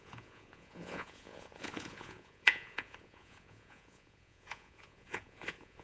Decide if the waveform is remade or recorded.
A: remade